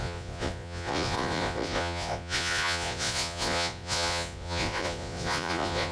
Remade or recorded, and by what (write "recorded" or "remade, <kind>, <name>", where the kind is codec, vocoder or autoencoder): remade, vocoder, Vocos